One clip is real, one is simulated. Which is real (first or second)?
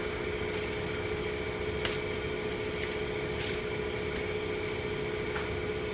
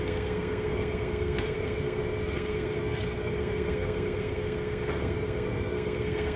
first